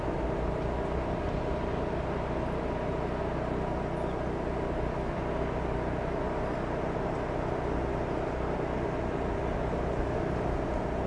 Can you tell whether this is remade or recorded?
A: recorded